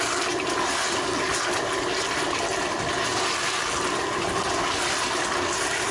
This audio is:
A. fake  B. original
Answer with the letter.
B